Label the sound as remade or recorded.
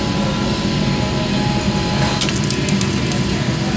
recorded